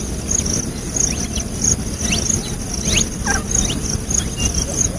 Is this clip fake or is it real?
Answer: real